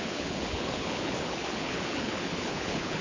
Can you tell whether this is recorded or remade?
remade